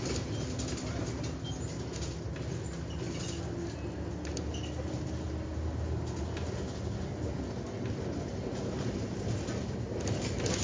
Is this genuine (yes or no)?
yes